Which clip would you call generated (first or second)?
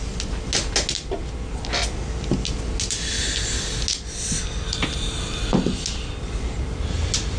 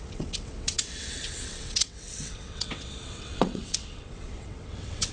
second